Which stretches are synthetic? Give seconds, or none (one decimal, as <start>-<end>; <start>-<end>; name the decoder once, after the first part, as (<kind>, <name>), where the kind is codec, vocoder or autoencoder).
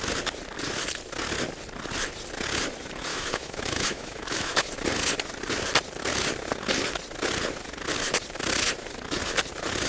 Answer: 3.1-4.7 (autoencoder, DAC-VAE)